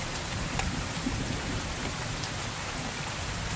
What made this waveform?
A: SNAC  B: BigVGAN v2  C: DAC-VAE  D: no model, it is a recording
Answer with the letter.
B